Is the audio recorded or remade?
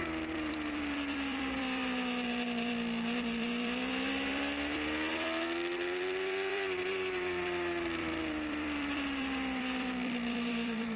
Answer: remade